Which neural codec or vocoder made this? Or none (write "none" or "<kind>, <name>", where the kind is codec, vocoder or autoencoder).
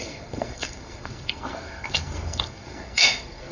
codec, SNAC